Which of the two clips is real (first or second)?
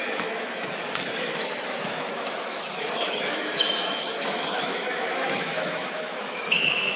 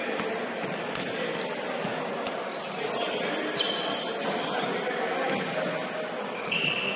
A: second